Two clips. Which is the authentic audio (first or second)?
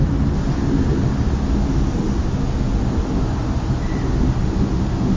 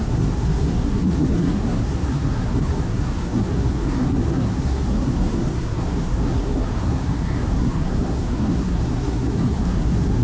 first